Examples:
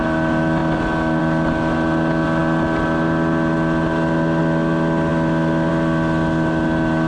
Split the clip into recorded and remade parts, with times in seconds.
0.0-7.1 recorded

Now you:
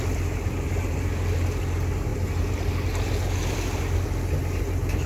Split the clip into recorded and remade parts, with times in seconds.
0.0-5.1 recorded

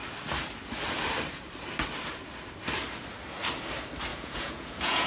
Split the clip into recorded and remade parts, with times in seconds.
0.0-4.1 recorded; 4.1-5.1 remade

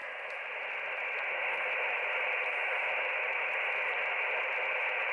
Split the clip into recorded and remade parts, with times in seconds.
0.0-5.1 recorded

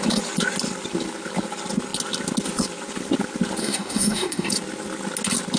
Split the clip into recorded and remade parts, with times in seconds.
0.0-3.6 recorded; 3.6-4.5 remade; 4.5-5.6 recorded

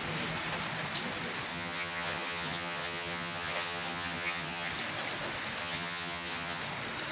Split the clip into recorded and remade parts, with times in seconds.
0.0-1.5 recorded; 1.5-4.7 remade; 4.7-5.6 recorded; 5.6-6.6 remade; 6.6-7.1 recorded